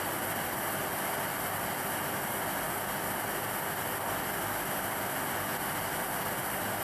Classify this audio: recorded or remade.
recorded